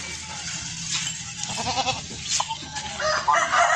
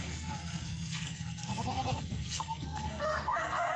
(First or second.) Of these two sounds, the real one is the first